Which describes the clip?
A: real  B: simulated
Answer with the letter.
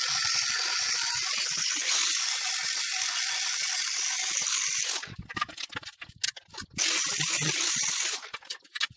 A